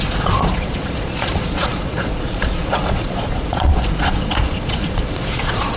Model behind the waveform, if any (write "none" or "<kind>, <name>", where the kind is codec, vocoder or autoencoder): vocoder, Vocos